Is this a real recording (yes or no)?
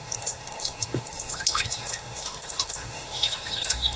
no